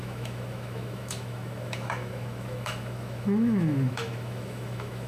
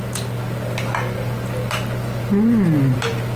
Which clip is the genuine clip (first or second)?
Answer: second